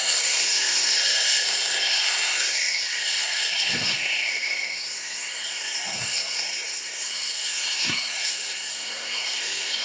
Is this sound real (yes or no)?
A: no